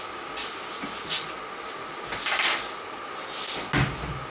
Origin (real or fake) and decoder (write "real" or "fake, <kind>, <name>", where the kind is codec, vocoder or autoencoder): real